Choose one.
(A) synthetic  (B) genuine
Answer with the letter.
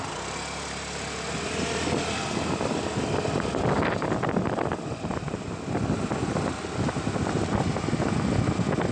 B